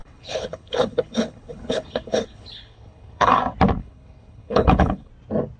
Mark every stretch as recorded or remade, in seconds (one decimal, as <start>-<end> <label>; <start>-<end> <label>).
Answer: 0.0-3.4 remade; 3.4-3.8 recorded; 3.8-5.1 remade; 5.1-5.6 recorded